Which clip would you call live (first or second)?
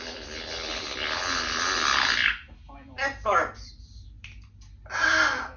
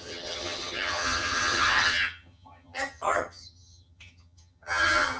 first